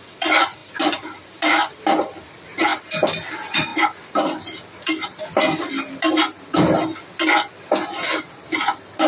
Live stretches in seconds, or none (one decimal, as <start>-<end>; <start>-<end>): 2.7-3.3; 3.7-8.2